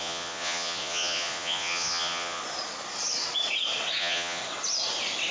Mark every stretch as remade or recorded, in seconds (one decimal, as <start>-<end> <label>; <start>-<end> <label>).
0.0-2.4 remade; 2.4-4.0 recorded; 4.0-4.4 remade; 4.4-5.3 recorded